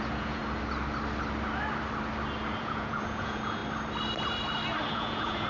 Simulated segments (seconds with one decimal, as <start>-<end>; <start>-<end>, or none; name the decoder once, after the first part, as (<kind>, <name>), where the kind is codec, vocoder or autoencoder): 0.0-0.4 (vocoder, Vocos); 2.6-3.6; 4.9-5.5